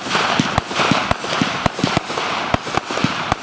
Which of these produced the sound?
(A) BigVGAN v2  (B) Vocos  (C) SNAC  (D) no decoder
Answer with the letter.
D